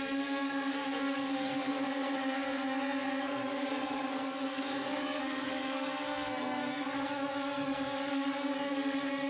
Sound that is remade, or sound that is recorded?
remade